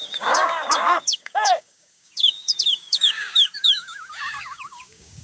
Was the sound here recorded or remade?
remade